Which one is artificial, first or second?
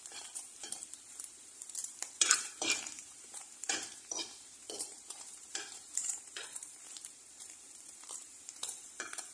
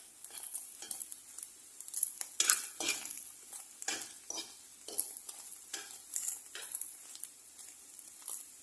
first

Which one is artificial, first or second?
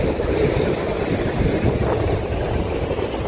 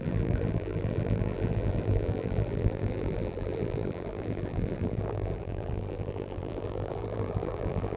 second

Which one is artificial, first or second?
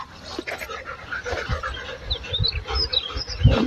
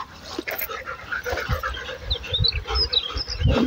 first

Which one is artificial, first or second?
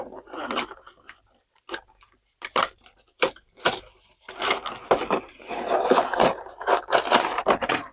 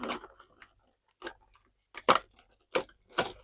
first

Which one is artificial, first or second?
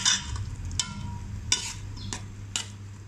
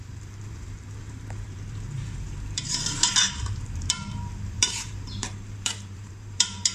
second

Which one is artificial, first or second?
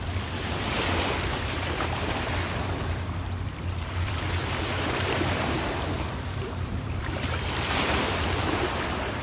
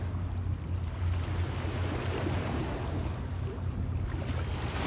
first